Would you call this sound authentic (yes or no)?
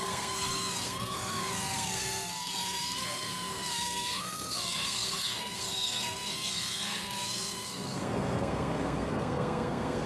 no